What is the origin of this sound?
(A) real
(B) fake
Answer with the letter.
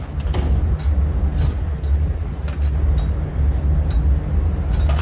A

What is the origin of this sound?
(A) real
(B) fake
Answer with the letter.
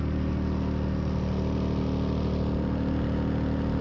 A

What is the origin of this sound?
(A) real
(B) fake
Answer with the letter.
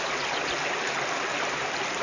A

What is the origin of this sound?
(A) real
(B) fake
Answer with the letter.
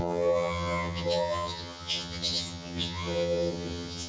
B